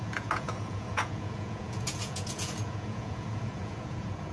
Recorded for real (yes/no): no